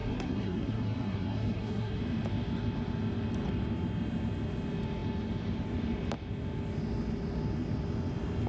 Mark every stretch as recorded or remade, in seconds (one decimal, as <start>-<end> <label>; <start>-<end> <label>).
0.0-2.0 remade; 2.0-8.5 recorded